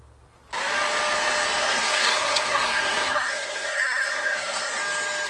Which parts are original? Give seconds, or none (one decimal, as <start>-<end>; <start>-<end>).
0.0-1.6; 4.8-5.3